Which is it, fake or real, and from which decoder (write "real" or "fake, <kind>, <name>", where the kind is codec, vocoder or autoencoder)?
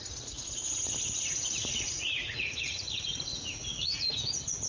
fake, vocoder, Vocos